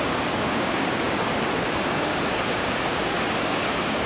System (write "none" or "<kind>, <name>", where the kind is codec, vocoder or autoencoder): codec, DAC